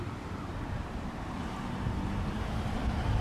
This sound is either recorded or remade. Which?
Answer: remade